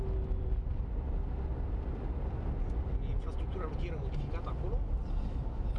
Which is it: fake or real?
real